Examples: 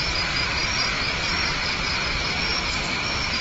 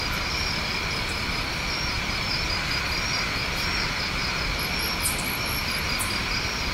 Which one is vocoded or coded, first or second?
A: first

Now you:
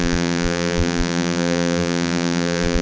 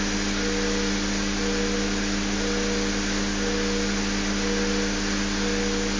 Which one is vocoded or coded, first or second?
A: first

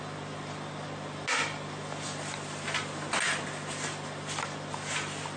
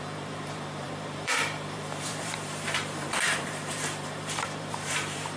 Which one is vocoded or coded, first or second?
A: second